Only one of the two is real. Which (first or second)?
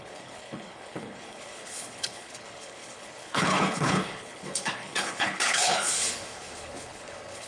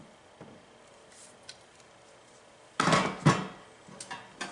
second